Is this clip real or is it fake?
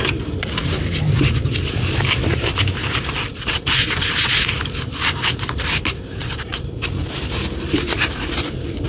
fake